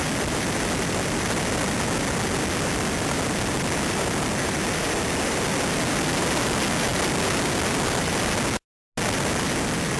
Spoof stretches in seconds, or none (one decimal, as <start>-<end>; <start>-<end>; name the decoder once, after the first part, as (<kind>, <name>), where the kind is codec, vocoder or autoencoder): none